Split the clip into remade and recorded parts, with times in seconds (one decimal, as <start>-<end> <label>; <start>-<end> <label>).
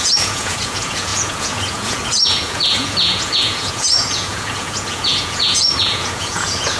0.0-6.8 remade